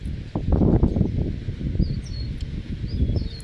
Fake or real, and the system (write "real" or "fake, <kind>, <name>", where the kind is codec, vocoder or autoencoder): real